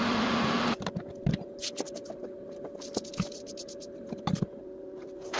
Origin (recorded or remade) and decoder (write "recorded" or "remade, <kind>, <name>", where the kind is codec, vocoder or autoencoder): recorded